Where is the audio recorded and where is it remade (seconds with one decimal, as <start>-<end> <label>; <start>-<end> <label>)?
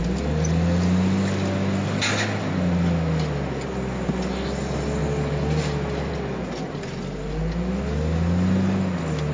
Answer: 0.0-9.3 recorded